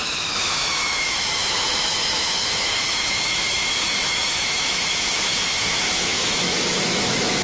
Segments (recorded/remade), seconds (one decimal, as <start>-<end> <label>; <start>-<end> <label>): 0.0-7.4 remade